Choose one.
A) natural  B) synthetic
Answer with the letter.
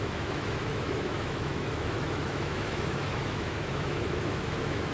B